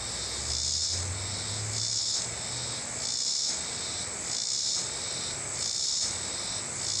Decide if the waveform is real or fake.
real